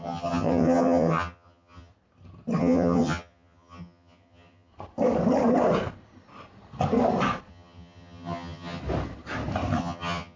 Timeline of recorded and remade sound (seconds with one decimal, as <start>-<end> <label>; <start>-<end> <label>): 0.0-1.9 remade; 1.9-2.6 recorded; 2.6-4.7 remade; 4.7-7.5 recorded; 7.5-8.8 remade; 8.8-9.8 recorded; 9.8-10.4 remade